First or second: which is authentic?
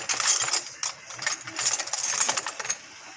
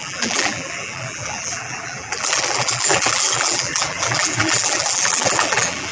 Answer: first